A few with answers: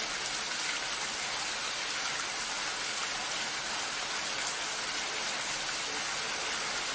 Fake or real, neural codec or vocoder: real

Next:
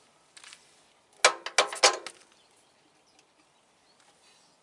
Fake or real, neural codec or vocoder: real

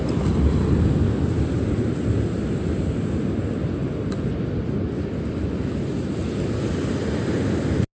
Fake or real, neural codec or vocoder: real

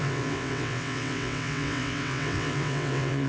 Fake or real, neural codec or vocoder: fake, vocoder, WaveNeXt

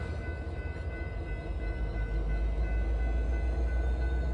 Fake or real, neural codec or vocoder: real